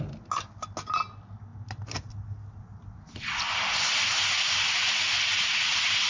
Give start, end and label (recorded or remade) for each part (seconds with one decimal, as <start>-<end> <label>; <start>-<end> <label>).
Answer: 0.0-1.5 recorded; 1.5-2.1 remade; 2.1-6.1 recorded